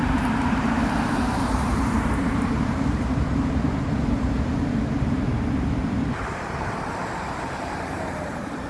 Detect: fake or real fake